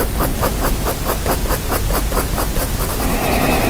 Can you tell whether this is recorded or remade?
recorded